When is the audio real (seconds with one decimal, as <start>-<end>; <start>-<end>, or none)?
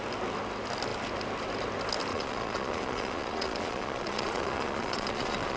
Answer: 0.0-2.1